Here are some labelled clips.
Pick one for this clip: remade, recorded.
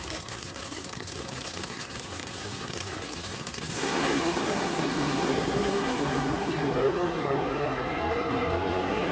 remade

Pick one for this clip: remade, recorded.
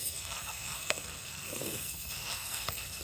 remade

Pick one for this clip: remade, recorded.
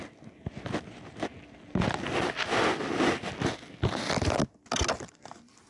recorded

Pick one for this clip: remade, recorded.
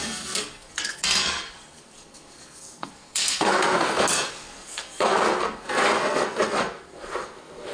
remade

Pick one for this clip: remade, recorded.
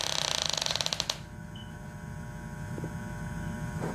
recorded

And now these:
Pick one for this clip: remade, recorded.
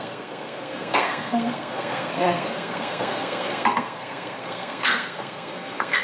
remade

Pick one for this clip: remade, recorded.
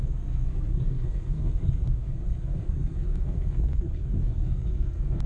remade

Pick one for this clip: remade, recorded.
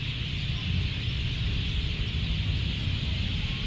recorded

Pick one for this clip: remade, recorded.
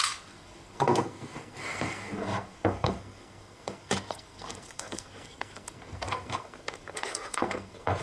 remade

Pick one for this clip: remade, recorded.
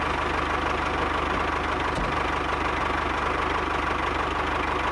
recorded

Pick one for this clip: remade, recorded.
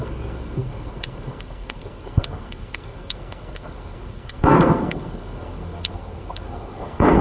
remade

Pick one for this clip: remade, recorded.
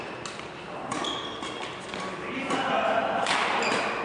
recorded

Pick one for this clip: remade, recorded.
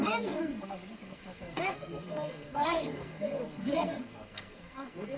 remade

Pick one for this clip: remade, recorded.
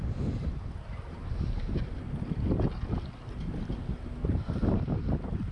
recorded